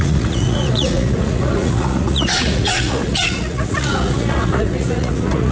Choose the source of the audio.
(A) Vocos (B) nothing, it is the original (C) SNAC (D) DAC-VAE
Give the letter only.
A